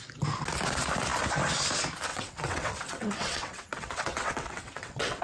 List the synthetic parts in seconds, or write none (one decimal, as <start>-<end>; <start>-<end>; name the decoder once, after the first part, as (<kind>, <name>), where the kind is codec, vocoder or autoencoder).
2.1-5.2 (vocoder, WaveNeXt)